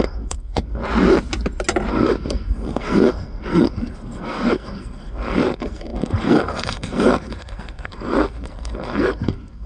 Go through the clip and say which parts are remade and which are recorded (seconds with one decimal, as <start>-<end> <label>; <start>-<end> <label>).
0.0-0.8 remade; 0.8-1.9 recorded; 1.9-9.7 remade

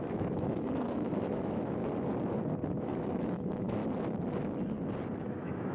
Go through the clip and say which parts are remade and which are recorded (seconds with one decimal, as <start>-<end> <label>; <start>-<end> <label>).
0.0-1.8 remade; 1.8-2.8 recorded; 2.8-3.8 remade; 3.8-5.2 recorded; 5.2-5.7 remade

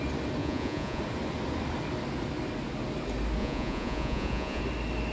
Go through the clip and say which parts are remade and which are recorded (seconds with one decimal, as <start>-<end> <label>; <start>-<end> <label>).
0.0-0.4 recorded; 0.4-1.0 remade; 1.0-3.4 recorded; 3.4-4.6 remade; 4.6-5.1 recorded

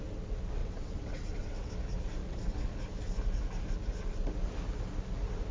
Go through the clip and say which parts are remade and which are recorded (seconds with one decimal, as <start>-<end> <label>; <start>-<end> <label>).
0.0-0.6 recorded; 0.6-1.7 remade; 1.7-5.5 recorded